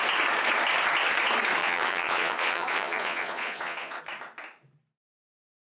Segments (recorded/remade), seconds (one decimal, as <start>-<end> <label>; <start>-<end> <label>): 0.0-1.6 recorded; 1.6-4.0 remade; 4.0-5.7 recorded

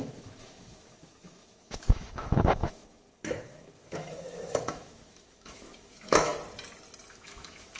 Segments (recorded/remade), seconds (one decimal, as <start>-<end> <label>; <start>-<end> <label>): 0.0-6.3 remade; 6.3-7.1 recorded; 7.1-7.8 remade

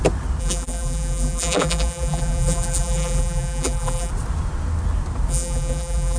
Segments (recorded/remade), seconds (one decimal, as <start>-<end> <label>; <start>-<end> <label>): 0.0-0.4 recorded; 0.4-4.1 remade; 4.1-5.3 recorded; 5.3-6.2 remade

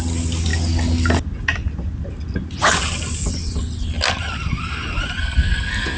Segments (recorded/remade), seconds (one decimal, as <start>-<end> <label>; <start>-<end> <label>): 0.0-5.2 recorded; 5.2-6.0 remade

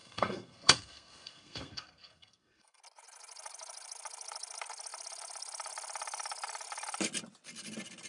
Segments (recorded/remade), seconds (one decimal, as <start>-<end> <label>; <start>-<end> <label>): 0.0-2.8 remade; 2.8-8.1 recorded